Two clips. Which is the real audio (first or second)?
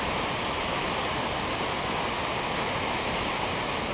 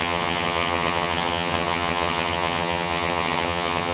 first